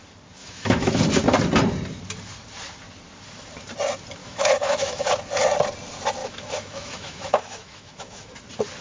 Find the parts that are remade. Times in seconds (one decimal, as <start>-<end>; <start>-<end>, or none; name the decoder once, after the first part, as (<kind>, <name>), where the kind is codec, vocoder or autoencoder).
0.4-1.0 (autoencoder, DAC-VAE); 4.2-5.2; 6.2-8.3